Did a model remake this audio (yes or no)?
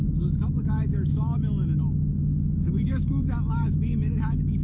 yes